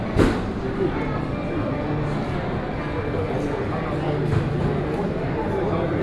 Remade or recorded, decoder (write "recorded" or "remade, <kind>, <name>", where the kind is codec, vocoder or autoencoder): recorded